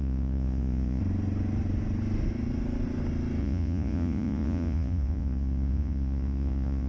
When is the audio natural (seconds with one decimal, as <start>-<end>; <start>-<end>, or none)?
1.0-3.4